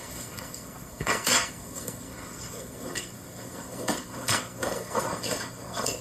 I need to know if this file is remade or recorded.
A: remade